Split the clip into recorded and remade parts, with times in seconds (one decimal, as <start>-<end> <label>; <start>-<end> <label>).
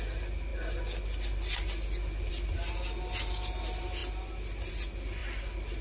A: 0.0-5.8 recorded